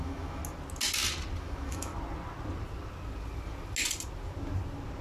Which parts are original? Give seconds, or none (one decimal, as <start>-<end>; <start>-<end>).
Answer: 0.4-1.4; 1.9-5.0